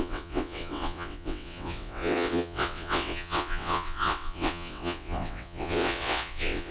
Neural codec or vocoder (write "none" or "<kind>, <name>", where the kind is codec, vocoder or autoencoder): vocoder, WaveNeXt